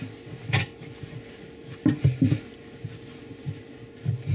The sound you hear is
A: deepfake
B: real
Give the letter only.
B